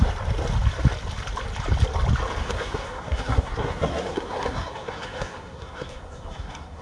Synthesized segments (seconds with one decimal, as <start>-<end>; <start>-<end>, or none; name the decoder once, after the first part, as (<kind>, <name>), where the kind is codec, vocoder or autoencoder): 2.4-6.8 (codec, SNAC)